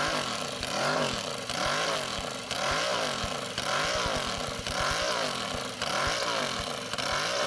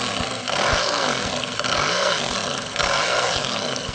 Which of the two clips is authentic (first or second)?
first